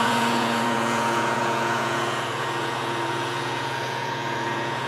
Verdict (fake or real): fake